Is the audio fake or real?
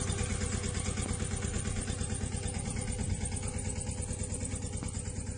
real